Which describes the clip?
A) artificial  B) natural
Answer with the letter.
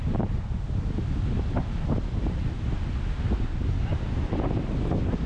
B